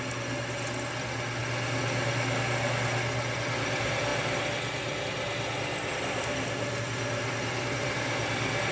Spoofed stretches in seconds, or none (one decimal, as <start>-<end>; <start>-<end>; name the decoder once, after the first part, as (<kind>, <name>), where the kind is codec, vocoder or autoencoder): none

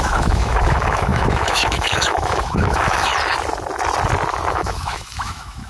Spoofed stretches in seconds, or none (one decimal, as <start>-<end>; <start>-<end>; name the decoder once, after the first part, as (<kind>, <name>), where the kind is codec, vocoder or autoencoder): 0.0-3.1 (autoencoder, DAC-VAE); 4.5-5.7

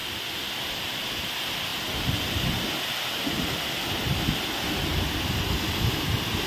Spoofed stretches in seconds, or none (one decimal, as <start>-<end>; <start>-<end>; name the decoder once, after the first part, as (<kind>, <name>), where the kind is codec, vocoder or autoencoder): none

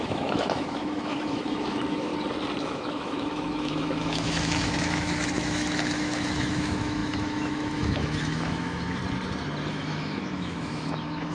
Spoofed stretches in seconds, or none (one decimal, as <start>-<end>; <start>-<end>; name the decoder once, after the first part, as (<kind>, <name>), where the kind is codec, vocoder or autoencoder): 0.0-2.1 (autoencoder, DAC-VAE); 2.6-9.0; 9.7-11.3

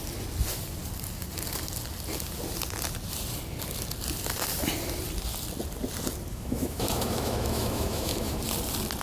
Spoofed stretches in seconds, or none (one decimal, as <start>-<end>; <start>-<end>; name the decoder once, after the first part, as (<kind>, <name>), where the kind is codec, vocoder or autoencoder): 6.3-8.4 (autoencoder, DAC-VAE)

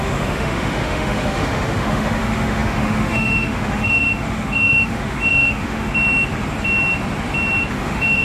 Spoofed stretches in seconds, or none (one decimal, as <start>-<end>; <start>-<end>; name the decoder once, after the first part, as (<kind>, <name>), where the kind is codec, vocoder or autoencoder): 0.0-5.9 (autoencoder, DAC-VAE); 7.7-8.2

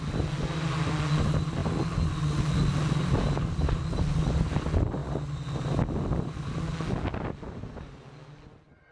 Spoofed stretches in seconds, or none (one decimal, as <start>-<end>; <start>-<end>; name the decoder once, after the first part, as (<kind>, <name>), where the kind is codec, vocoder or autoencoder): none

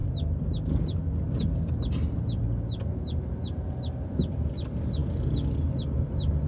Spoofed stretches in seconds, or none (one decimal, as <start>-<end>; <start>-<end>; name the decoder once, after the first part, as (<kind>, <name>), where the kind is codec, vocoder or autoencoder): none